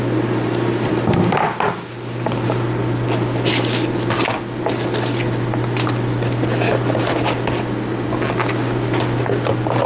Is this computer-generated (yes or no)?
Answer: no